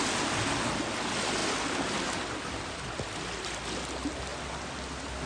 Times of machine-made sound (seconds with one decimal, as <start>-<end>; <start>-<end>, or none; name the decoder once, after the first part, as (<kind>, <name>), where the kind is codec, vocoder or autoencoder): none